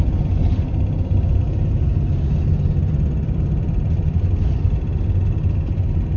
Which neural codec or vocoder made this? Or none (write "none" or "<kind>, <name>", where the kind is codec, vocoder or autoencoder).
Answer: none